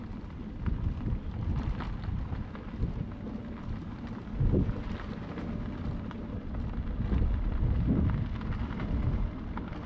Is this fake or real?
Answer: real